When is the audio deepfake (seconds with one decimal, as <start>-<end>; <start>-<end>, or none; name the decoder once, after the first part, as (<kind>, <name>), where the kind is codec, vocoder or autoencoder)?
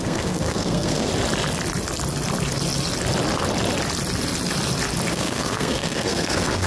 0.0-1.1 (codec, SNAC); 5.1-6.7